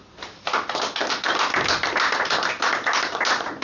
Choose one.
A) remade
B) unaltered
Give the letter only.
B